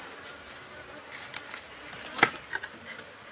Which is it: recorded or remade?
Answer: recorded